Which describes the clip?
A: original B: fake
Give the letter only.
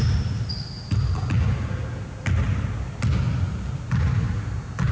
A